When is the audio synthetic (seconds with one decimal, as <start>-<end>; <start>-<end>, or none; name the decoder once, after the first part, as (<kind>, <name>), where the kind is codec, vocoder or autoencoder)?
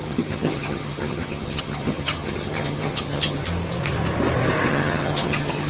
0.0-3.4 (vocoder, HiFi-GAN); 4.7-5.7